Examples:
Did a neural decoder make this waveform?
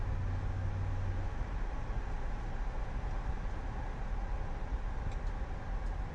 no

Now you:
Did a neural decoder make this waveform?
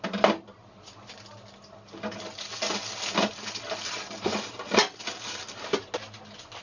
no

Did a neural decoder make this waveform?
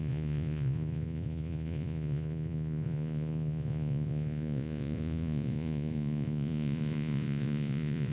yes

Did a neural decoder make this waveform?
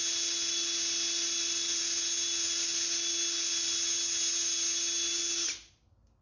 no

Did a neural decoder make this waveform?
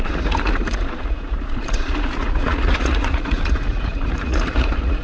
yes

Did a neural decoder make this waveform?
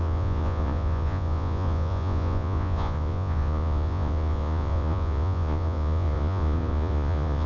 yes